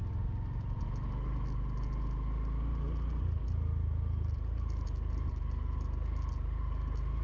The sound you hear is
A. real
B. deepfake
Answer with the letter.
A